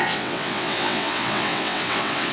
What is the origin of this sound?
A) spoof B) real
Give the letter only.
A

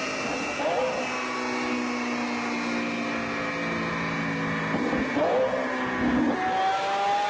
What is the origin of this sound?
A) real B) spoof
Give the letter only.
A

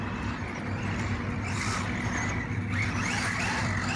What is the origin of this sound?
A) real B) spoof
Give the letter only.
A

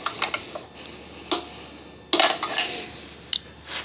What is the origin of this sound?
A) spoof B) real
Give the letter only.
B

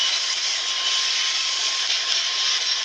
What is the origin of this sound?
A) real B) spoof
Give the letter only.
A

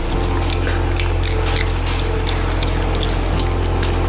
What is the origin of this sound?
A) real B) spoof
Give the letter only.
A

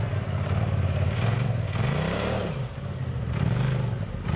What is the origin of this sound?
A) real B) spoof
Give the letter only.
B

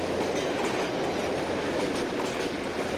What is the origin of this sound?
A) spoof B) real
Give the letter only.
B